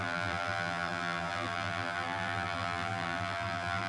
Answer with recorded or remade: remade